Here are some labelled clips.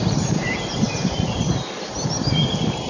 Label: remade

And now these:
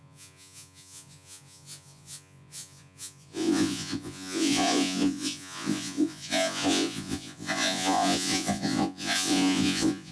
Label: remade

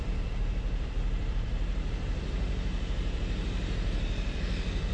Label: remade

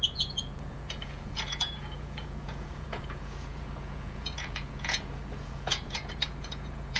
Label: remade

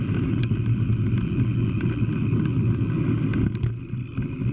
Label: recorded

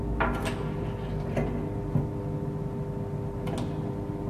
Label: recorded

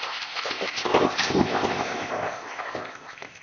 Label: remade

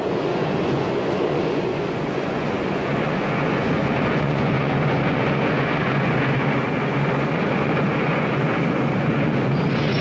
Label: remade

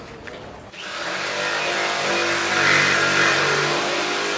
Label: recorded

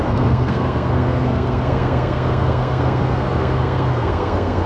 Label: remade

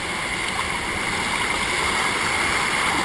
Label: recorded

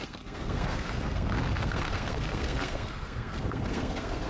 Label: remade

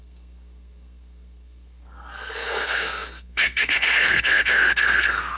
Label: remade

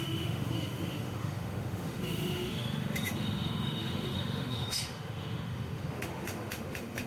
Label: remade